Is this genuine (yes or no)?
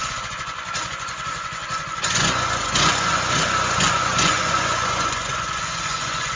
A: no